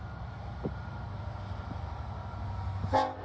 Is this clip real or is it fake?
real